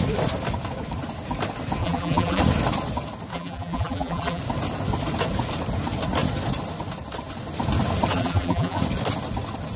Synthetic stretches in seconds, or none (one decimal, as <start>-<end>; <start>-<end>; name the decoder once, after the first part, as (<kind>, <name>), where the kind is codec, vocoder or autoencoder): 1.8-2.4 (vocoder, BigVGAN v2); 3.3-4.4; 8.1-8.8